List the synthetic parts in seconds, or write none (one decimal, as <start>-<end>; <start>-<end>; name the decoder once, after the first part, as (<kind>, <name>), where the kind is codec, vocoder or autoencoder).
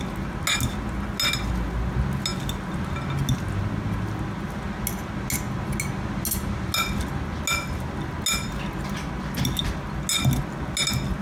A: none